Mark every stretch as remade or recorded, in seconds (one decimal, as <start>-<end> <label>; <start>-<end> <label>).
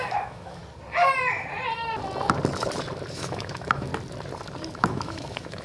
0.0-0.6 remade; 0.6-3.1 recorded; 3.1-3.9 remade; 3.9-4.7 recorded; 4.7-5.6 remade